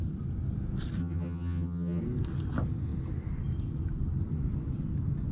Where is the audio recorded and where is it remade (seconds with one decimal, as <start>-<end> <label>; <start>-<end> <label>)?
0.0-1.0 recorded; 1.0-2.0 remade; 2.0-5.3 recorded